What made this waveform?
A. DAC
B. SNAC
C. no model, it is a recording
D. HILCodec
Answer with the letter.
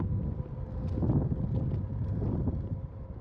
C